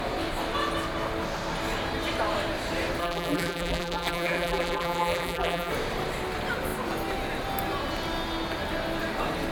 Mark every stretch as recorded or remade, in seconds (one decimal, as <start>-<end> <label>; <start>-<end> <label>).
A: 0.0-3.0 recorded; 3.0-5.7 remade; 5.7-9.5 recorded